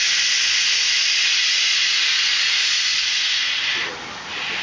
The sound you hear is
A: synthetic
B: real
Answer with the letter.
B